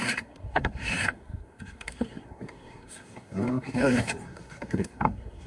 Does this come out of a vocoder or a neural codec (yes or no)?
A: yes